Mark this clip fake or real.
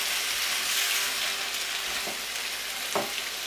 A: real